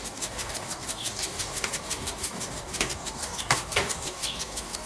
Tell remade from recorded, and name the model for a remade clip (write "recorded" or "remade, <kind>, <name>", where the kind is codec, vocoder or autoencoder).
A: remade, codec, DAC